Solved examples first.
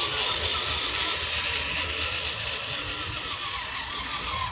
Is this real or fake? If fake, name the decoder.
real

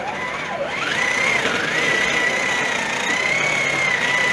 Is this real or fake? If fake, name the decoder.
real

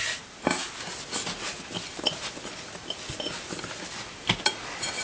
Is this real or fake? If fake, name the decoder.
real